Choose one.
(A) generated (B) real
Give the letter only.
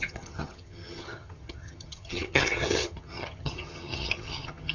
A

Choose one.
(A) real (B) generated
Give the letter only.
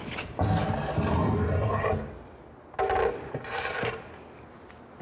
A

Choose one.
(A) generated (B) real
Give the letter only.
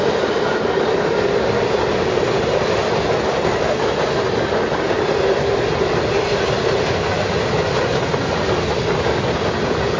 B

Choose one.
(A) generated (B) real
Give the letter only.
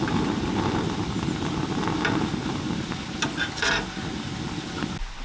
B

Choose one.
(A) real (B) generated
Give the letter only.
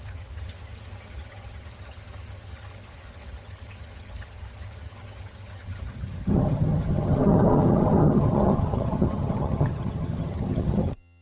B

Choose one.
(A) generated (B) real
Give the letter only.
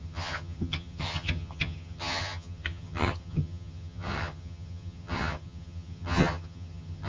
A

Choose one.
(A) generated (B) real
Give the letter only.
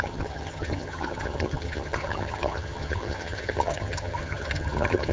A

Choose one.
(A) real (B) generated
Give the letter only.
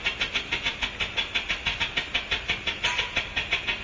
A